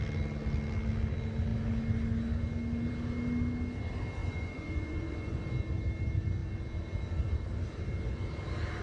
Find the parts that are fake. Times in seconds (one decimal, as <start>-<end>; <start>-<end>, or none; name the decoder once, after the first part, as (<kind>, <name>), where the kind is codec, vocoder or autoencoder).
4.2-5.4 (vocoder, Vocos)